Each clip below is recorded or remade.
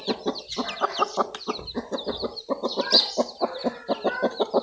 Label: recorded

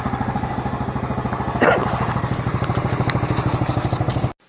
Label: recorded